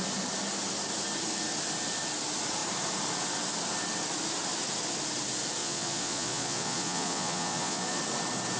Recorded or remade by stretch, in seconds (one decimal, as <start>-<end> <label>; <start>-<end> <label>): 0.0-5.6 recorded; 5.6-8.0 remade; 8.0-8.6 recorded